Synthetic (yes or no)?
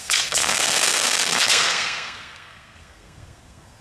yes